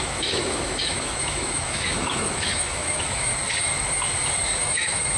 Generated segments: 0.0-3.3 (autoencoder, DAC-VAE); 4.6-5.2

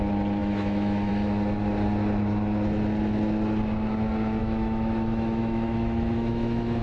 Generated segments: 0.4-1.1 (autoencoder, DAC-VAE); 4.4-6.8

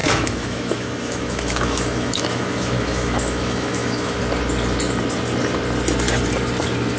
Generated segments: 0.0-4.2 (autoencoder, DAC-VAE)

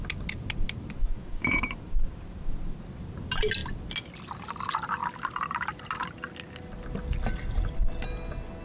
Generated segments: 1.0-1.6 (autoencoder, DAC-VAE)